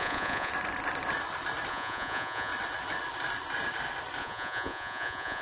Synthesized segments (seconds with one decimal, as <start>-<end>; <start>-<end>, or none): 0.0-0.5; 1.7-2.5; 4.2-5.4